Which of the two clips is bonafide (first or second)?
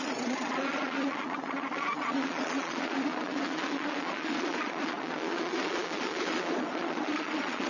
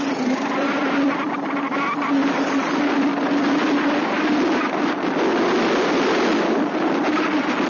second